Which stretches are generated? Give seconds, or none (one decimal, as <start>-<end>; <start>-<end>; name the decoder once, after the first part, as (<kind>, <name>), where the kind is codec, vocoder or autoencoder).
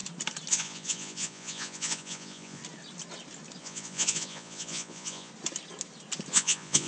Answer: 0.5-2.6 (vocoder, Vocos); 3.6-5.3; 6.3-6.9